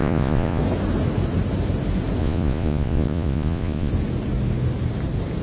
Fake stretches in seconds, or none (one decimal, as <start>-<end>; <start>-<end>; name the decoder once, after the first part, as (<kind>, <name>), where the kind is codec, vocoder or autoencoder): 0.0-0.6 (vocoder, Vocos); 2.2-3.9